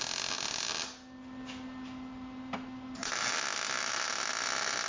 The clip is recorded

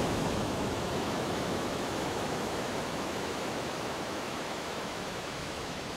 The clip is remade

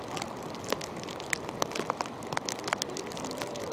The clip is recorded